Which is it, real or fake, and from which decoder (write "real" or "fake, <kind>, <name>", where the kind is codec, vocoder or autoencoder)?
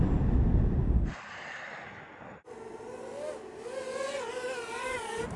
real